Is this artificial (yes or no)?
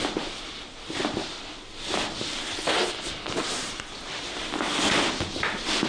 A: no